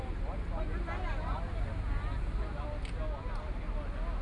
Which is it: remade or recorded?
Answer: recorded